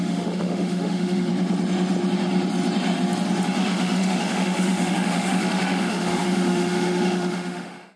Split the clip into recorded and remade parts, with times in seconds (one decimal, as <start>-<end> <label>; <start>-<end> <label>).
0.0-1.3 remade; 1.3-3.6 recorded; 3.6-8.0 remade

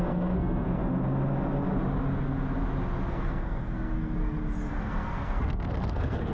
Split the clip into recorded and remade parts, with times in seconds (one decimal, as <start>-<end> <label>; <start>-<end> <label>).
0.0-0.8 remade; 0.8-3.1 recorded; 3.1-4.2 remade; 4.2-4.7 recorded; 4.7-6.3 remade

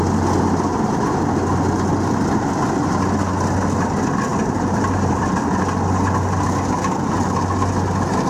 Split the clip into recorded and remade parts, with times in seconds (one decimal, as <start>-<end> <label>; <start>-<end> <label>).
0.0-4.3 recorded; 4.3-5.2 remade; 5.2-8.3 recorded